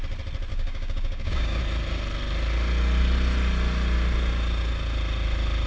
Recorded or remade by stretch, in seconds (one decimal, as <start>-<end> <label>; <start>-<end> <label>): 0.0-0.5 recorded; 0.5-1.6 remade; 1.6-5.7 recorded